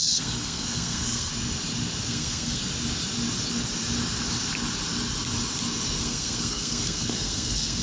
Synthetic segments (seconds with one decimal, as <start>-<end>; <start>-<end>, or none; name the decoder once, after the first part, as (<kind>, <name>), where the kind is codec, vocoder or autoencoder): 0.0-1.3 (codec, SNAC); 2.1-2.6; 6.0-7.8